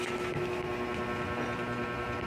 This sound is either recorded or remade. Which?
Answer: recorded